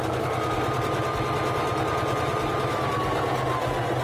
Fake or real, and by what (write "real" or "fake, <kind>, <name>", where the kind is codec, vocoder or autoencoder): real